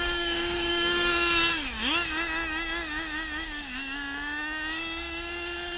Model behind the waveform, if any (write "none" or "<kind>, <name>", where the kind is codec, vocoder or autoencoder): codec, DAC